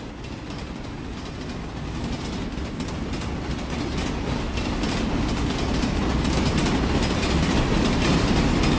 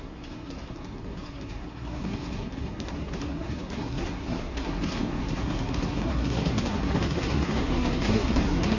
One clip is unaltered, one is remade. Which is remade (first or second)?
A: second